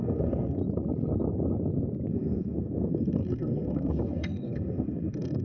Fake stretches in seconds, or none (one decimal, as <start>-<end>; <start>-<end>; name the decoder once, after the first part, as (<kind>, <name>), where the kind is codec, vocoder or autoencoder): 0.0-0.6 (codec, SNAC); 2.1-5.4